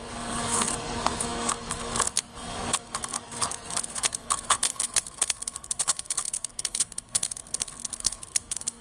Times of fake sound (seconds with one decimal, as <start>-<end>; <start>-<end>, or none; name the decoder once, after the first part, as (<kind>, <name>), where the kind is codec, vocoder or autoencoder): 0.0-8.8 (codec, SNAC)